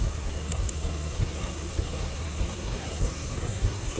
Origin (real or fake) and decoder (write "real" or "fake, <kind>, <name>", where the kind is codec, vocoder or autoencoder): fake, codec, SNAC